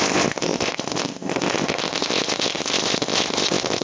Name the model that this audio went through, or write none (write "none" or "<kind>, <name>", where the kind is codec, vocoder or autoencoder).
codec, ZipCodec